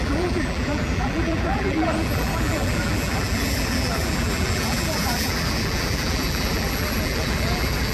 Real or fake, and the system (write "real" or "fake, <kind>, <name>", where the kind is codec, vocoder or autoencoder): fake, vocoder, BigVGAN v2